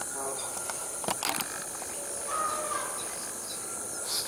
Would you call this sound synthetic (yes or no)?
no